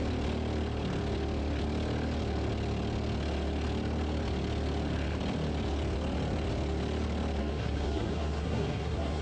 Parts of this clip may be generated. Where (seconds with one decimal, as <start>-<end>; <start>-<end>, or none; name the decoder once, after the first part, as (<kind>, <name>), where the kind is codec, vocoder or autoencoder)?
7.4-9.2 (codec, SNAC)